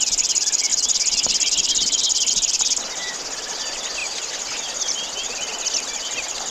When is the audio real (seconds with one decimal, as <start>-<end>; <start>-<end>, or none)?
0.0-6.5